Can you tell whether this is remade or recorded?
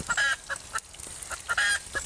recorded